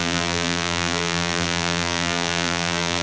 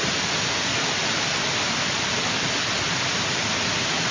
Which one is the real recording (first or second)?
second